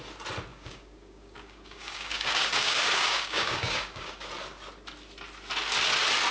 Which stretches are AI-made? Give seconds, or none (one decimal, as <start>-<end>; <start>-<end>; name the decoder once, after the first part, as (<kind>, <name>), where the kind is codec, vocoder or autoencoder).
0.5-4.3 (codec, DAC)